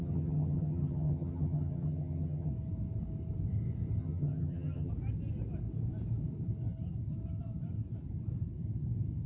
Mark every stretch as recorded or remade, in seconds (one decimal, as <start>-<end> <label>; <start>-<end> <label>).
0.0-2.5 remade; 2.5-4.0 recorded; 4.0-4.9 remade; 4.9-9.3 recorded